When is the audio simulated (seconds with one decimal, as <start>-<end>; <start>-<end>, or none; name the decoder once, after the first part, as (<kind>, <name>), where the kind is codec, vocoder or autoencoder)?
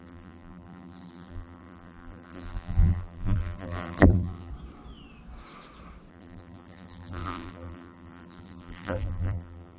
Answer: 0.0-4.5 (vocoder, BigVGAN v2); 6.1-9.8